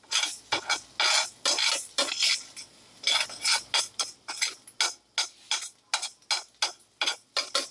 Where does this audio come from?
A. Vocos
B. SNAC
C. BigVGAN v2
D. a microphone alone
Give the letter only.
D